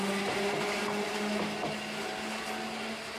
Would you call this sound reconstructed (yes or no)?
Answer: no